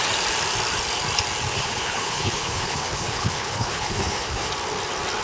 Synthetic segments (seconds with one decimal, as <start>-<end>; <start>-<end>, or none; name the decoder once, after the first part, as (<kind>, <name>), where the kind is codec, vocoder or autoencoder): 1.5-4.5 (codec, HILCodec)